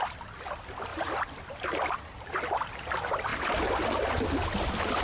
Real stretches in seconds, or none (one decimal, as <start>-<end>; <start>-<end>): none